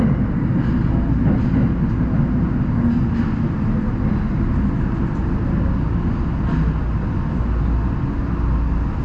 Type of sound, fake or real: real